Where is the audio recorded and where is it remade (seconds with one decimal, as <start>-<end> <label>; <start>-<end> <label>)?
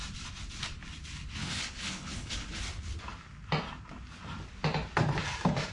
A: 0.0-1.4 recorded; 1.4-2.6 remade; 2.6-5.7 recorded